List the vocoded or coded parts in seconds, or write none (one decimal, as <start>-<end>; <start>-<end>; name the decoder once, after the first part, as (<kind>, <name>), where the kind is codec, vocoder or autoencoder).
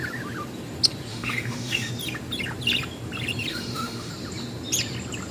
1.1-1.9 (autoencoder, DAC-VAE); 3.5-4.1